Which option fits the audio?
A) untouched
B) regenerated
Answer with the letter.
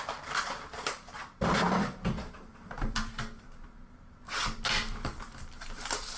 A